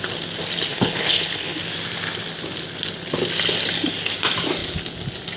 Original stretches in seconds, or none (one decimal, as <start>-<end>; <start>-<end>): 0.0-0.7; 1.6-5.4